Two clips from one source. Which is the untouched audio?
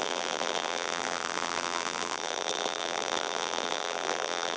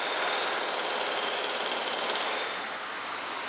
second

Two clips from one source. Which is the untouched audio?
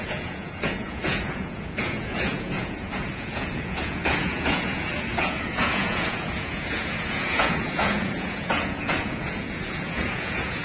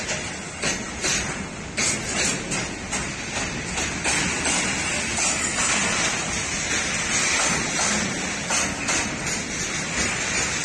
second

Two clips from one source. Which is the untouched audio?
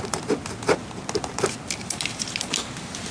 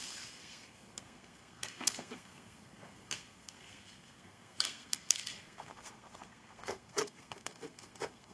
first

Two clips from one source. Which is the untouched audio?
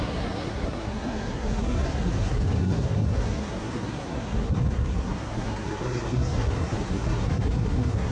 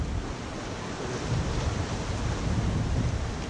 second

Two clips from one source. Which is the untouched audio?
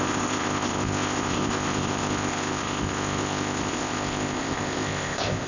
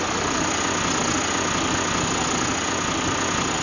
second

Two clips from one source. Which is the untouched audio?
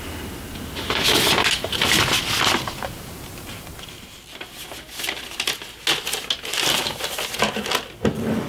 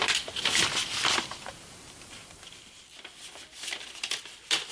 first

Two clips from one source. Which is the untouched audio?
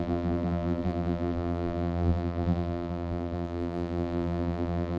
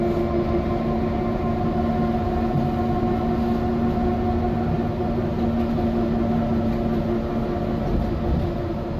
second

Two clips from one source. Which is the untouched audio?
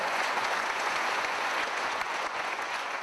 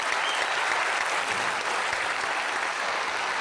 second